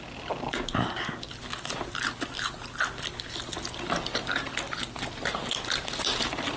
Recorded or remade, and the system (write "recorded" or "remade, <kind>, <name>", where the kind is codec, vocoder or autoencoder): recorded